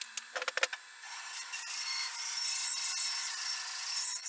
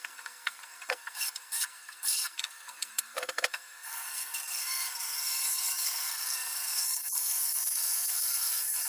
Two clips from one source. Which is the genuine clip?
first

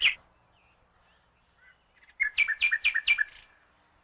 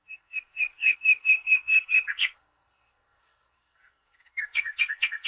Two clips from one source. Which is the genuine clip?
first